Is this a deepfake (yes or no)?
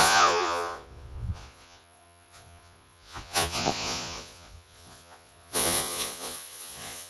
yes